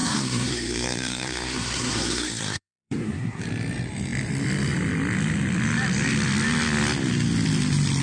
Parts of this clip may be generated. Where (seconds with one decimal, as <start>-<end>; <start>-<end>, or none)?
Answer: 0.0-3.4